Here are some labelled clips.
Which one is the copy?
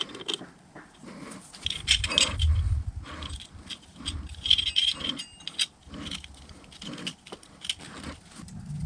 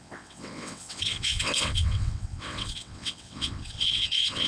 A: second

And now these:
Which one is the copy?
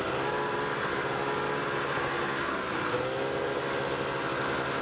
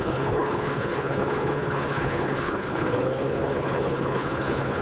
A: second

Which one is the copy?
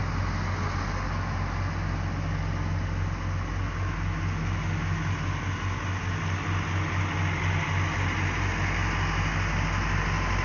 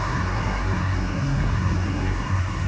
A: second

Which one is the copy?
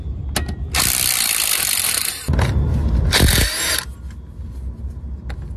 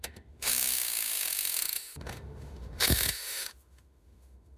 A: second